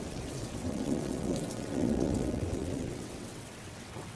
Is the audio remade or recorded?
remade